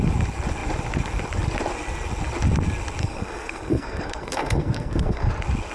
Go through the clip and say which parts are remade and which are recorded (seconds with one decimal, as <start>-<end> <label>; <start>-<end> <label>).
0.0-3.0 recorded; 3.0-5.3 remade; 5.3-5.7 recorded